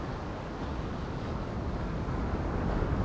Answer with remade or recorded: remade